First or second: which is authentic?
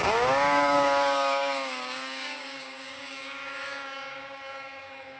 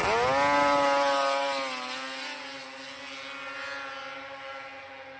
second